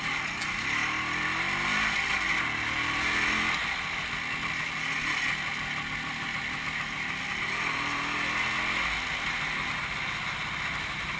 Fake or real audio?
real